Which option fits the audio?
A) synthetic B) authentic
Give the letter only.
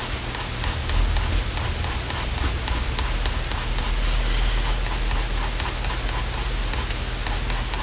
B